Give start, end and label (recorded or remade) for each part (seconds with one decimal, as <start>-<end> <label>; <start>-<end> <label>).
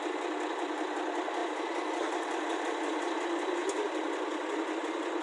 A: 0.0-5.2 recorded